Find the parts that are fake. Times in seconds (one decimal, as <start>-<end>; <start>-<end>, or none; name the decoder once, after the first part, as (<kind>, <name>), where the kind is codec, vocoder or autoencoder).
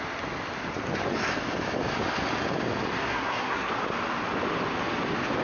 3.1-3.7 (codec, SNAC)